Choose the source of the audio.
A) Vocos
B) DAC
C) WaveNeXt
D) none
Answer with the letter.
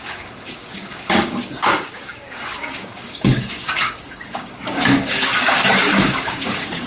B